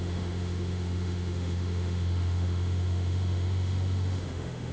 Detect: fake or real fake